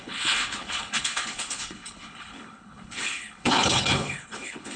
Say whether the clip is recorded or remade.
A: remade